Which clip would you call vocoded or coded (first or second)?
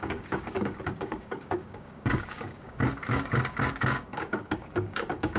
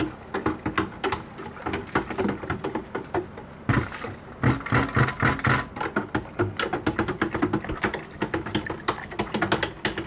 first